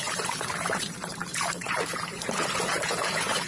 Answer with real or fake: fake